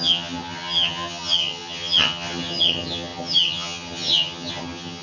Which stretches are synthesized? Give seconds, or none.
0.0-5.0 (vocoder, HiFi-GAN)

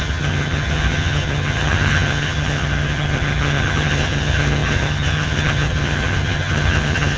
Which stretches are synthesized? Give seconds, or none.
0.0-7.2 (vocoder, HiFi-GAN)

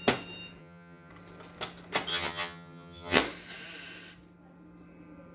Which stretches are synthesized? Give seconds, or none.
0.6-1.1 (vocoder, HiFi-GAN); 2.1-3.2

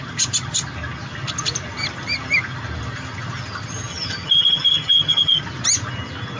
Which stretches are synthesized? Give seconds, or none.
3.9-5.4 (vocoder, HiFi-GAN)

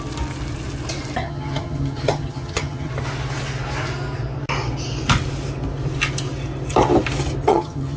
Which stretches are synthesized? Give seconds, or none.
1.2-2.9 (vocoder, HiFi-GAN); 7.5-8.0

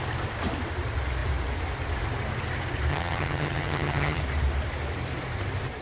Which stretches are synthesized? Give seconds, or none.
2.9-4.2 (vocoder, HiFi-GAN)